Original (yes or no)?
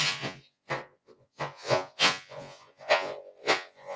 no